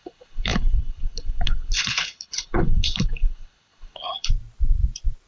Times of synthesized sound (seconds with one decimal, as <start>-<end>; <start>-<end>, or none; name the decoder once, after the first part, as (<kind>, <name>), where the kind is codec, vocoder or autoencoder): 0.0-4.3 (codec, HILCodec)